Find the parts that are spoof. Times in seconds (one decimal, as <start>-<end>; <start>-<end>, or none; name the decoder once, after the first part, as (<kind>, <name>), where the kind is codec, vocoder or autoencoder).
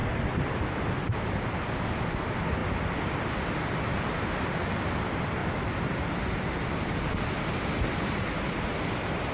none